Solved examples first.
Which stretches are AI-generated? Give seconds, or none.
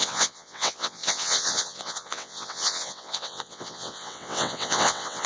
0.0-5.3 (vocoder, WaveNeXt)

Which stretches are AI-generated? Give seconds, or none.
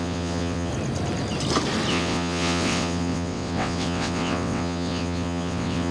0.0-0.7 (vocoder, WaveNeXt); 1.9-5.9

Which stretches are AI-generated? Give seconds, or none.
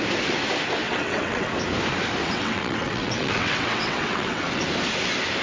0.8-1.5 (vocoder, WaveNeXt); 2.2-4.6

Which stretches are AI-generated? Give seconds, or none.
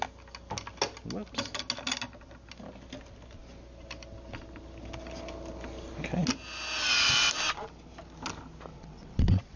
8.7-9.6 (vocoder, WaveNeXt)